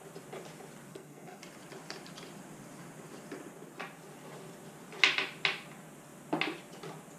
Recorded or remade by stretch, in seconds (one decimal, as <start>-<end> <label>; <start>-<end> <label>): 0.0-0.9 recorded; 0.9-1.4 remade; 1.4-7.2 recorded